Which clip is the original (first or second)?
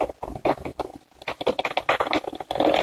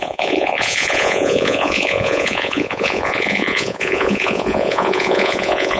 first